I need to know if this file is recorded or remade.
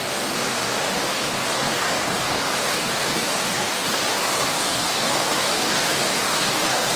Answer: remade